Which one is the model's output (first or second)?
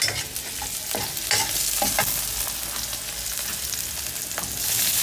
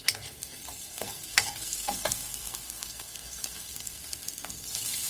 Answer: second